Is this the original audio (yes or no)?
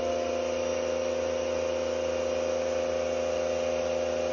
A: yes